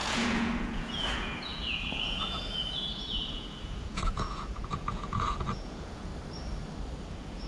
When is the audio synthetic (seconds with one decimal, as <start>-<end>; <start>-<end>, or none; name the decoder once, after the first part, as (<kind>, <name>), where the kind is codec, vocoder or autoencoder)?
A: 0.0-6.1 (vocoder, Vocos); 7.1-7.5